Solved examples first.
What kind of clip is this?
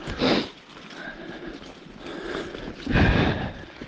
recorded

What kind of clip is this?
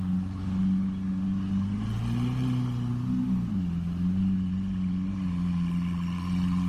recorded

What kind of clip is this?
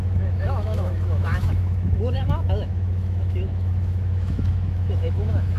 remade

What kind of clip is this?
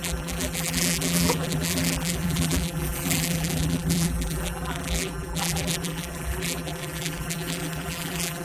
remade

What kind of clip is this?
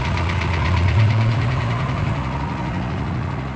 remade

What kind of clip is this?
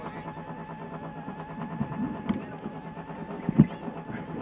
recorded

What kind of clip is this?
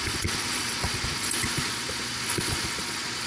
remade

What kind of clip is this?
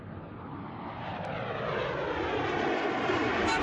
recorded